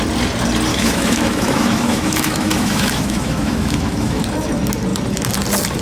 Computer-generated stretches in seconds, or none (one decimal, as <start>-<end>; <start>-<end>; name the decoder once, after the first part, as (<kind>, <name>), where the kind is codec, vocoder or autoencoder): 0.7-4.2 (autoencoder, DAC-VAE)

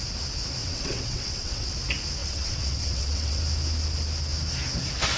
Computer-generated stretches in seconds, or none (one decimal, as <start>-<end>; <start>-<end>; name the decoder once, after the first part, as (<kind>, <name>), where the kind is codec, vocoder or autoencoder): 0.6-1.7 (vocoder, WaveNeXt); 2.2-3.4

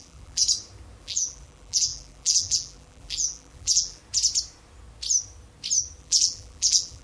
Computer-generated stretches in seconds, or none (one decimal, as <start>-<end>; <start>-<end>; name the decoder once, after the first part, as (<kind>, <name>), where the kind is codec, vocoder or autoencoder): 0.0-0.4 (vocoder, BigVGAN v2); 1.0-4.0; 6.0-7.0

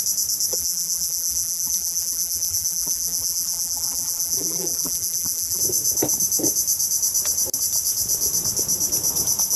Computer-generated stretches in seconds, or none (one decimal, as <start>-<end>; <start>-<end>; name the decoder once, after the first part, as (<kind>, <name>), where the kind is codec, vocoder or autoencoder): 0.5-5.6 (vocoder, BigVGAN v2)

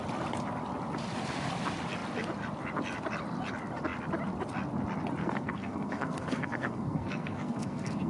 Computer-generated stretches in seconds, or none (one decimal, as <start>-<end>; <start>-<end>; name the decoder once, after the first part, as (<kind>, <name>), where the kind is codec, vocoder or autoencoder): 5.2-8.1 (codec, SNAC)

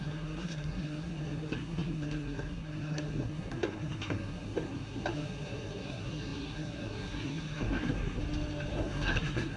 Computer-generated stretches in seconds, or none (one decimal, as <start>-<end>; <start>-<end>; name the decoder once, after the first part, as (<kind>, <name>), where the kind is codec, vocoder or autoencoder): 0.0-8.2 (codec, SNAC); 8.7-9.6

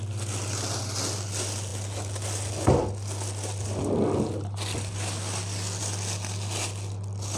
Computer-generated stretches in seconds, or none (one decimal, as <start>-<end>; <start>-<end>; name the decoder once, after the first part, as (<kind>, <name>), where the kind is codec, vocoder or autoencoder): none

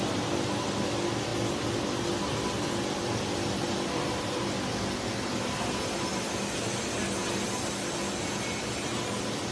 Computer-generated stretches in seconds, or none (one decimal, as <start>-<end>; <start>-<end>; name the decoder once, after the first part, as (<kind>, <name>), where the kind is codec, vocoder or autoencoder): none